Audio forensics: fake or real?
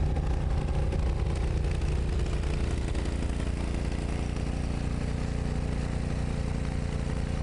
real